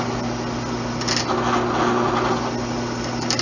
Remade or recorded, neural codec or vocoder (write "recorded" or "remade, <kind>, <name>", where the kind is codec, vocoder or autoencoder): recorded